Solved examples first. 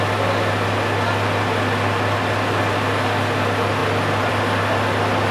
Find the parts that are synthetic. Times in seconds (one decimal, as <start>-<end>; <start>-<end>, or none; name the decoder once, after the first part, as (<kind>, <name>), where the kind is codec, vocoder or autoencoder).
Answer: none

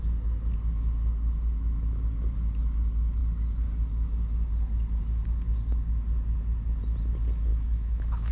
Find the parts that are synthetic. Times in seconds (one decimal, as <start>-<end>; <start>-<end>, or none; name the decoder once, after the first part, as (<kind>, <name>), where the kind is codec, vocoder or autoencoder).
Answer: 7.5-8.3 (autoencoder, DAC-VAE)

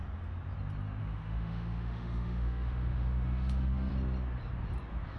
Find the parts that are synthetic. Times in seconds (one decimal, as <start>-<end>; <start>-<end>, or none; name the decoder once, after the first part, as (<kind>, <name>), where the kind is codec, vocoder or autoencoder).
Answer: 1.0-3.9 (autoencoder, DAC-VAE)

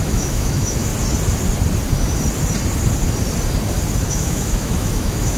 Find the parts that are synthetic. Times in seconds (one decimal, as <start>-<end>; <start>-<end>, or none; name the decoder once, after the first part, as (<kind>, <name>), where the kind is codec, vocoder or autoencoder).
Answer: 0.0-0.9 (autoencoder, DAC-VAE); 4.1-5.4

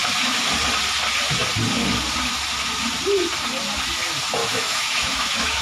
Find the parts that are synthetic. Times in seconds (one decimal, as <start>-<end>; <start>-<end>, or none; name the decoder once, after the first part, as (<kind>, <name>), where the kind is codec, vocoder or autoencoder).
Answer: 4.4-5.6 (autoencoder, DAC-VAE)